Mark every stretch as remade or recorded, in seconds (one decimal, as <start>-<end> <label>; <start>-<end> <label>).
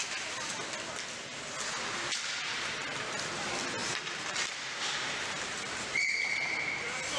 0.0-3.8 recorded; 3.8-6.7 remade; 6.7-7.2 recorded